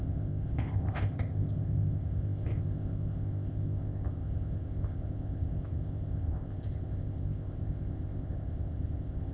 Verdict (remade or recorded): remade